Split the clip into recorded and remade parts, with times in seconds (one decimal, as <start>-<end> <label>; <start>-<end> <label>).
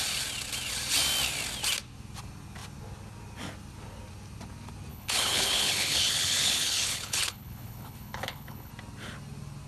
0.0-4.9 recorded; 4.9-8.7 remade; 8.7-9.7 recorded